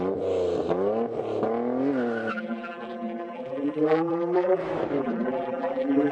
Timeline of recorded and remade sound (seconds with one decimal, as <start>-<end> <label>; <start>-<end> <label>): 0.0-2.3 recorded; 2.3-4.6 remade; 4.6-5.0 recorded; 5.0-6.1 remade